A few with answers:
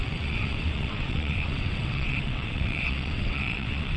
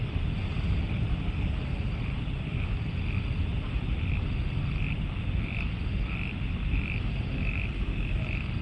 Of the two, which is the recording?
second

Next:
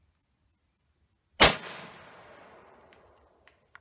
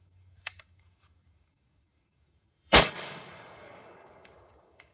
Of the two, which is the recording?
first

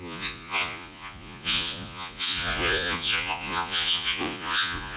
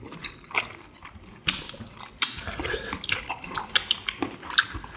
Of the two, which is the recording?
second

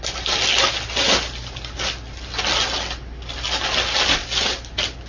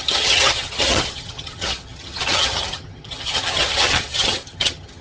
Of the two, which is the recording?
first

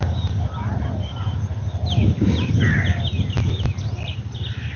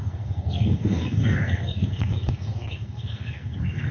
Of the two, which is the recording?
first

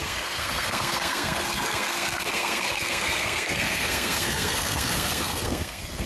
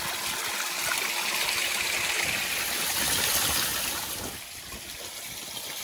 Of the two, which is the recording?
second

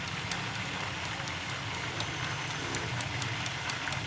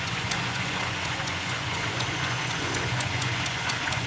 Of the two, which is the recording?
first